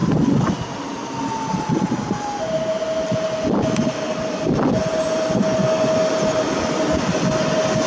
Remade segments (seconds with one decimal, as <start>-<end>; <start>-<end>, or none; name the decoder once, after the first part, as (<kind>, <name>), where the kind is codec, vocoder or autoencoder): none